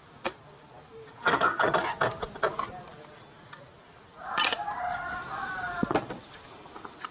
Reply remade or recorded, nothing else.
recorded